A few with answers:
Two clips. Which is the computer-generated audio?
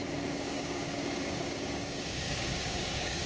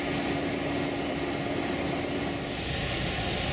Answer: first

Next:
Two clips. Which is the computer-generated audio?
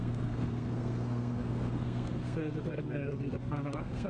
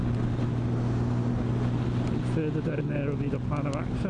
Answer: first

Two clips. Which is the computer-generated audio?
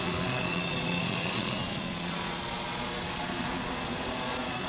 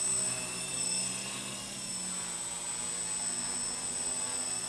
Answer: first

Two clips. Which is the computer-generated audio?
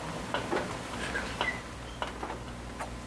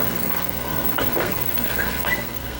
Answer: second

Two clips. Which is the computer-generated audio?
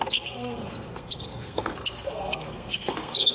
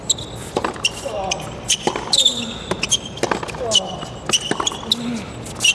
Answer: first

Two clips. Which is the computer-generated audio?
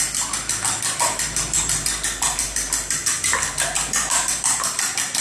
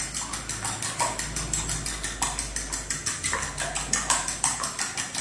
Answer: first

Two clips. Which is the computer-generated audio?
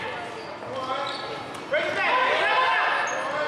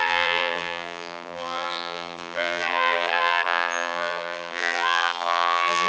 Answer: second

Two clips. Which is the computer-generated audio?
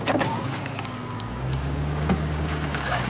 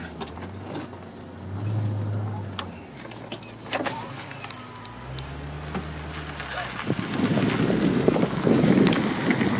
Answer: first